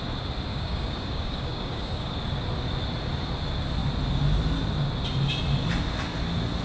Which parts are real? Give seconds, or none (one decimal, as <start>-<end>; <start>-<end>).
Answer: 0.0-0.5; 2.1-6.6